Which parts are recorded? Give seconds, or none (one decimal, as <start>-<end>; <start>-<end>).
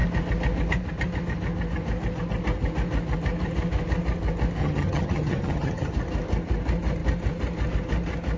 0.0-4.6; 5.9-8.4